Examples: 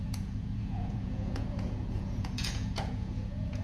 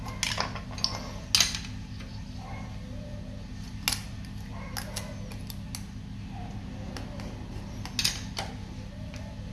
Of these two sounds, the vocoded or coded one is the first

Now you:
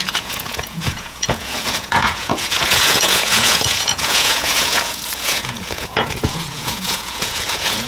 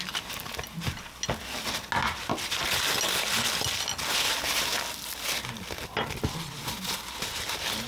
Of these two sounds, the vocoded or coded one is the first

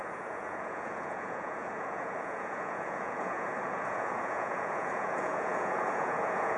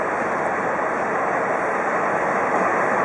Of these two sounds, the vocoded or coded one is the first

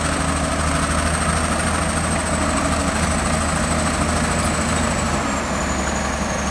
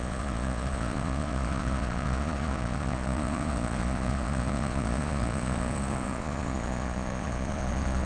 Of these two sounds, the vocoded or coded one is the second